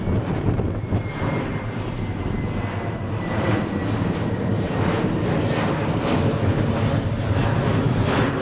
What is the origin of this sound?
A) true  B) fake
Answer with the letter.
A